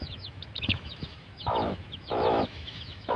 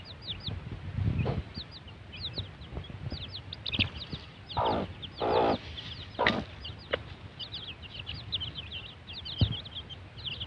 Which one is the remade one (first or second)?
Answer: first